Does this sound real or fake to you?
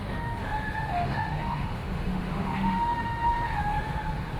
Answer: fake